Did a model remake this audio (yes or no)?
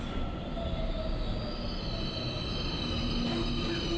no